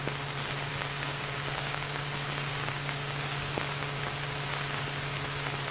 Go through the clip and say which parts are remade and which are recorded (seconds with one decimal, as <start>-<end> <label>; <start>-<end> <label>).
0.0-0.7 recorded; 0.7-4.1 remade; 4.1-5.7 recorded